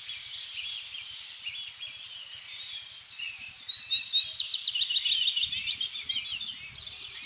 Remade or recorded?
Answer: recorded